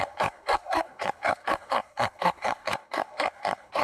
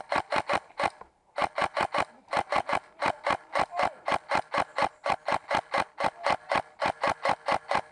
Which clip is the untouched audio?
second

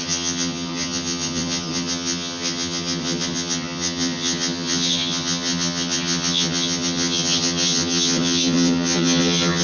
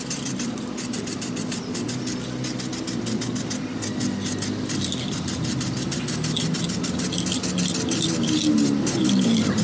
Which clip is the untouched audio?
second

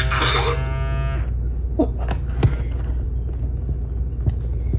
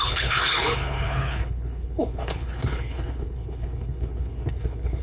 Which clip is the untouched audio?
first